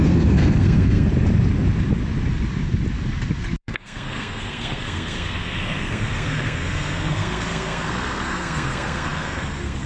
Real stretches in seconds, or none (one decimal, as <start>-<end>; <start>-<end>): 1.1-3.6